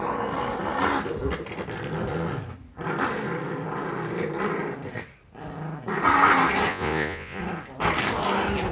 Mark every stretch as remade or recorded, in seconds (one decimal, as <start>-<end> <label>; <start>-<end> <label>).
0.0-6.7 recorded; 6.7-7.4 remade; 7.4-8.7 recorded